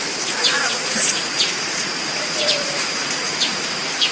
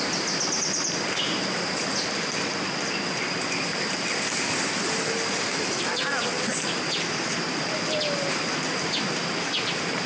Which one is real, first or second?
second